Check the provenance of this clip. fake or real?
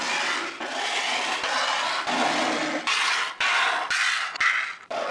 real